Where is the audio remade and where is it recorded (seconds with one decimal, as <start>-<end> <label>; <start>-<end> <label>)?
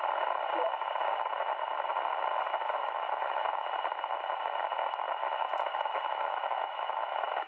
0.0-2.8 recorded; 2.8-3.4 remade; 3.4-5.7 recorded; 5.7-7.5 remade